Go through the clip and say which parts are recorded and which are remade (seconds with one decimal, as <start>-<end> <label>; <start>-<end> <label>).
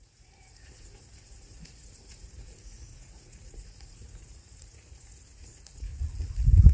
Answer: 0.0-5.9 remade; 5.9-6.7 recorded